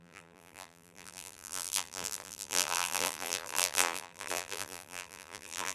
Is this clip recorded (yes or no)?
no